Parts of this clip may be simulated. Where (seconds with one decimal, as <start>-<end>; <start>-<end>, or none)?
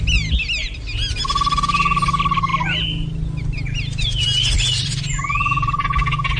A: none